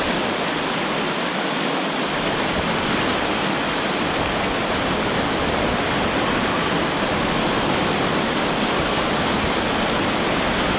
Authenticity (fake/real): real